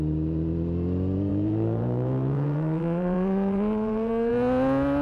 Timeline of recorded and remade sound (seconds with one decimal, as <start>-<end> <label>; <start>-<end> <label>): 0.0-1.3 recorded; 1.3-4.3 remade; 4.3-5.0 recorded